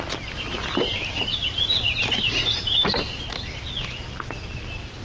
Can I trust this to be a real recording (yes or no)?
yes